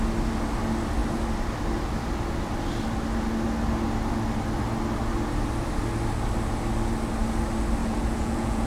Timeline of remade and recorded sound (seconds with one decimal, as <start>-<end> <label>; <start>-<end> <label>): 0.0-7.8 recorded; 7.8-8.7 remade